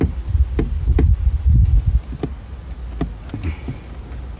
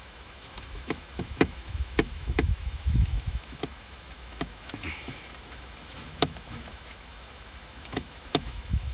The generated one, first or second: second